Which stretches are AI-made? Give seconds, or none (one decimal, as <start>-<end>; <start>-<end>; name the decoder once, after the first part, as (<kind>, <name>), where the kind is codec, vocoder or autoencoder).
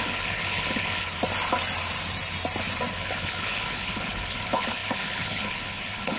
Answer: 0.0-1.2 (codec, HILCodec); 2.9-6.2